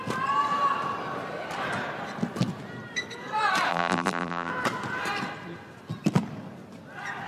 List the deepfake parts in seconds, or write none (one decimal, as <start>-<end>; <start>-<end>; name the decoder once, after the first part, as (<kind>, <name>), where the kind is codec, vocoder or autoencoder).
3.7-4.5 (vocoder, BigVGAN v2)